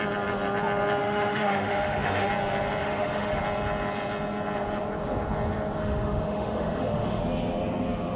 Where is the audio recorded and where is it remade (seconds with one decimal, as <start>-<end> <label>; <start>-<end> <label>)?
0.0-1.0 recorded; 1.0-2.3 remade; 2.3-2.8 recorded; 2.8-3.4 remade; 3.4-5.8 recorded; 5.8-7.2 remade; 7.2-8.2 recorded